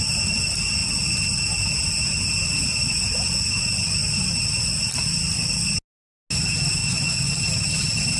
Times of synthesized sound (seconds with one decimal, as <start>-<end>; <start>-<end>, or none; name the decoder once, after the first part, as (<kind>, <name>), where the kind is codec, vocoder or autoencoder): 6.8-7.3 (vocoder, Vocos)